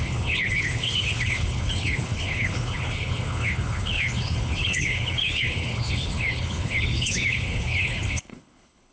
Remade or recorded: remade